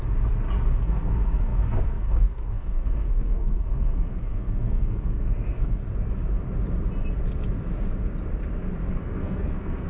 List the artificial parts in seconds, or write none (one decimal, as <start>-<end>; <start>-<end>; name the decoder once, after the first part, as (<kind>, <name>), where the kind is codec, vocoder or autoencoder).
0.7-5.8 (codec, SNAC); 8.9-9.9